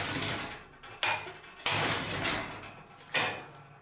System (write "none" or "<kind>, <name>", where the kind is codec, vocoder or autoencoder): none